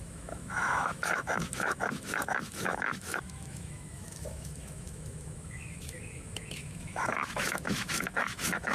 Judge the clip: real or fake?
fake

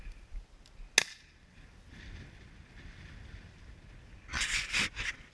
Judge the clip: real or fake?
real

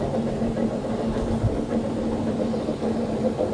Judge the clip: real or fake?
real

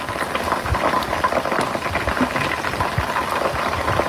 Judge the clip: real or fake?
real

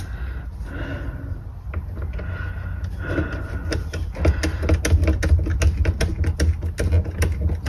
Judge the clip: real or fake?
real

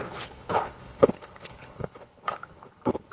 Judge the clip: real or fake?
fake